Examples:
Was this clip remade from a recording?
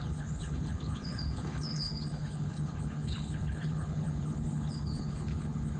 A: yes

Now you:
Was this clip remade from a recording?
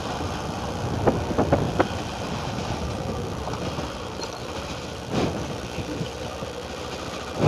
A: no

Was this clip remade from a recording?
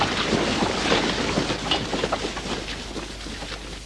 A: no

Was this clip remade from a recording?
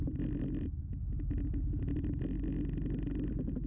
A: no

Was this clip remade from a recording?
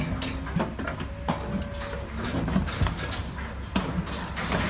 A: no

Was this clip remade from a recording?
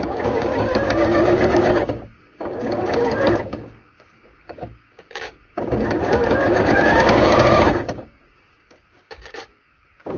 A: yes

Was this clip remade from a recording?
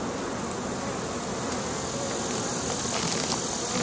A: no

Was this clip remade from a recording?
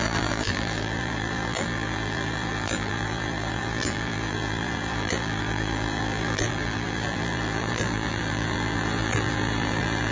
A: yes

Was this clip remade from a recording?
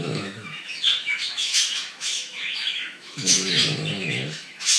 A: yes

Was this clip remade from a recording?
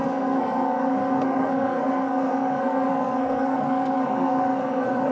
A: yes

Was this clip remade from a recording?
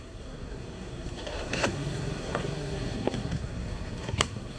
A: yes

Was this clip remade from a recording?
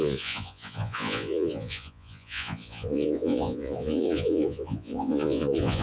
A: yes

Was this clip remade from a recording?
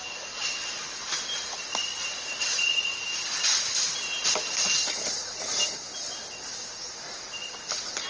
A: no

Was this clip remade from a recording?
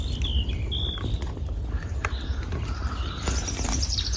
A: no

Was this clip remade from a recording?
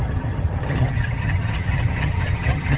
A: yes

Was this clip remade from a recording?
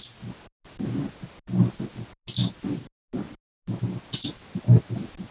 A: no